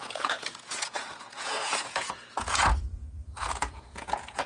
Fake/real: fake